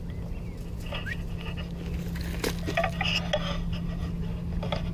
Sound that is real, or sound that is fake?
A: real